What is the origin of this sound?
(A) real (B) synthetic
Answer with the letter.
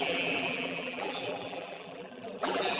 B